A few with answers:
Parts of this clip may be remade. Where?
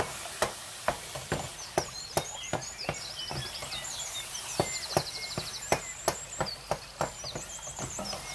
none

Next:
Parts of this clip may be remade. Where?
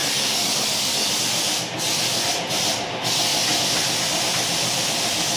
0.0-1.1 (codec, DAC)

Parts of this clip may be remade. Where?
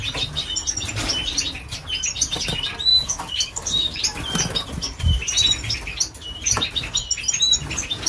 2.9-4.0 (codec, DAC)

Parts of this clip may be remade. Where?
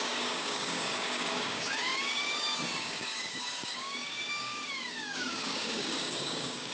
0.0-6.7 (codec, DAC)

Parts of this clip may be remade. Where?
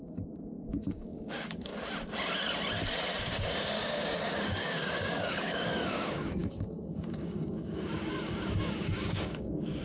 0.0-1.7 (codec, DAC); 3.2-9.8